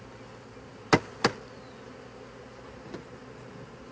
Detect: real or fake real